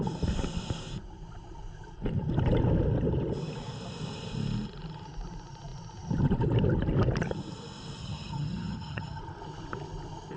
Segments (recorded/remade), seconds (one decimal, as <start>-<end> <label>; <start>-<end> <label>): 0.0-8.0 recorded; 8.0-9.2 remade; 9.2-10.4 recorded